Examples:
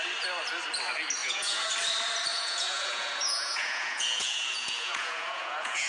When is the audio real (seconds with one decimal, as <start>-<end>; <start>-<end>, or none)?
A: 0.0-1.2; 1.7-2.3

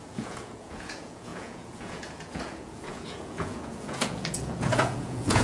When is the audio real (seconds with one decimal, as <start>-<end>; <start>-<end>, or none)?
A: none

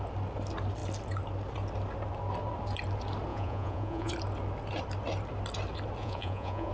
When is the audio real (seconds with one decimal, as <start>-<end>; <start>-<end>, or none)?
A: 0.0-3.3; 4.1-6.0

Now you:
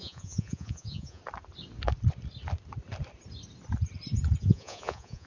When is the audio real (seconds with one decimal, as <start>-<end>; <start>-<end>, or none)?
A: 1.2-4.4

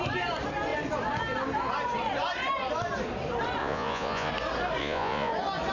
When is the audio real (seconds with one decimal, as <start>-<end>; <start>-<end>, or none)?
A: 0.0-3.6; 4.3-4.8; 5.3-5.7

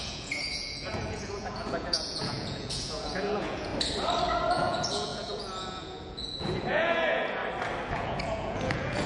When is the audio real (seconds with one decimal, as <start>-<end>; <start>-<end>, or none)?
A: 3.7-4.5; 7.4-7.9

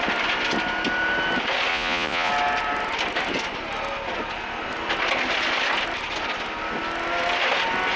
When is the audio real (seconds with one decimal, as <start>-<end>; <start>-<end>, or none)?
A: 0.0-1.7; 2.3-8.0